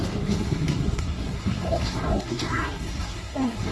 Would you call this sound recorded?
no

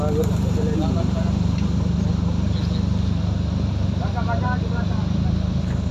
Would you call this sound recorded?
yes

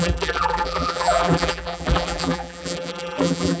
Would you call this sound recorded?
no